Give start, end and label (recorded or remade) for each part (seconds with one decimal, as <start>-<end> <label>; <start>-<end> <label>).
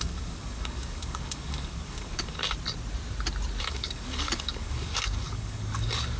0.0-2.4 remade; 2.4-3.6 recorded; 3.6-6.2 remade